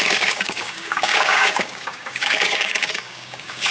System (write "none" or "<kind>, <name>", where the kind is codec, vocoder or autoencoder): codec, DAC